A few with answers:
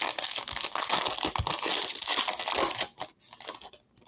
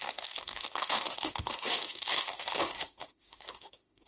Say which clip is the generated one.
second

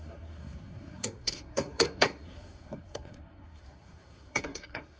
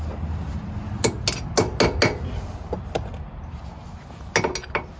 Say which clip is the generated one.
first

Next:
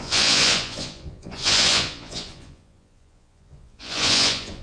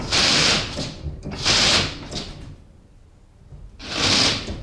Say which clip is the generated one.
first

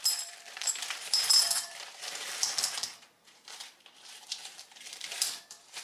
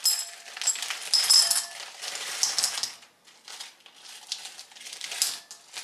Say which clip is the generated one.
first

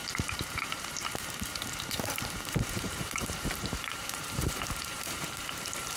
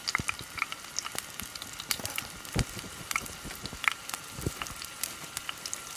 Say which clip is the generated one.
first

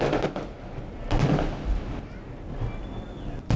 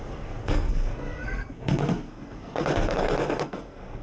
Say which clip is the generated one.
second